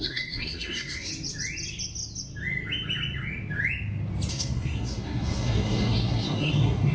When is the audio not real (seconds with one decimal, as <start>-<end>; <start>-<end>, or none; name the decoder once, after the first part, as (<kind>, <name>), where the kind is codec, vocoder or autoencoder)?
0.0-1.1 (codec, SNAC); 4.3-6.9